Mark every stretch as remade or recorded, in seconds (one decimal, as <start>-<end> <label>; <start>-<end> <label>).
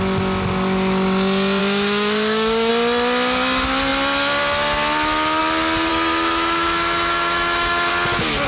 0.0-1.6 recorded; 1.6-2.7 remade; 2.7-5.9 recorded; 5.9-7.9 remade; 7.9-8.5 recorded